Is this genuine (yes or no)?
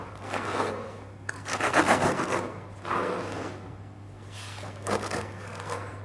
no